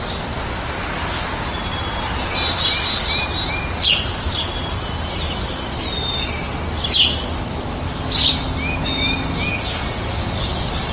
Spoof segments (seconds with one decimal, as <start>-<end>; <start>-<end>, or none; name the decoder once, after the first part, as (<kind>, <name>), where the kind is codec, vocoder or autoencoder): none